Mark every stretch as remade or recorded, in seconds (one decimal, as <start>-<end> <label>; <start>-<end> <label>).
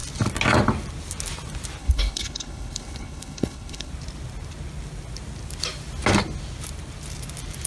0.0-1.8 recorded; 1.8-3.9 remade; 3.9-7.7 recorded